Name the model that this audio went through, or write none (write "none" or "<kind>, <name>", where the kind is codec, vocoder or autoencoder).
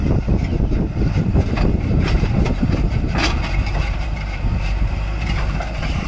vocoder, BigVGAN v2